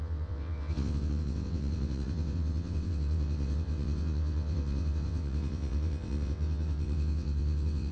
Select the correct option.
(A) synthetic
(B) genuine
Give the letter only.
A